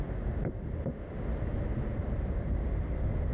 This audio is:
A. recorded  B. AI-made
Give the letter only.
A